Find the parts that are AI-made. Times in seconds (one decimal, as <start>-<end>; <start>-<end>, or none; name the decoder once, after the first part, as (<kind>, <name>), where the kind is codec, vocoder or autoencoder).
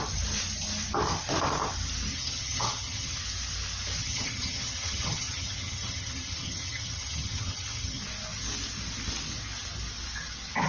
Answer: 2.1-3.2 (vocoder, HiFi-GAN); 4.0-8.0